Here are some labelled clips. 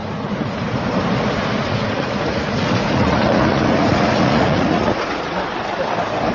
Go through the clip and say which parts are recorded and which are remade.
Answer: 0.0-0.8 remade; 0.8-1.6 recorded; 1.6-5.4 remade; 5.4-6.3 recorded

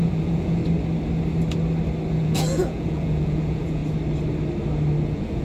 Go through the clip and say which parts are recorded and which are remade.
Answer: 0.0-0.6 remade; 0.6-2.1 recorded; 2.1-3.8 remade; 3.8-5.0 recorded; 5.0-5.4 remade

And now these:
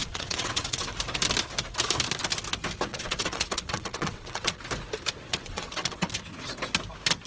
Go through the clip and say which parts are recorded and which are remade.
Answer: 0.0-0.9 remade; 0.9-2.9 recorded; 2.9-4.6 remade; 4.6-5.3 recorded; 5.3-6.1 remade; 6.1-7.3 recorded

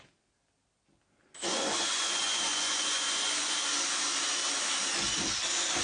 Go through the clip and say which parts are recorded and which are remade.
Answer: 0.0-1.5 recorded; 1.5-3.5 remade; 3.5-5.8 recorded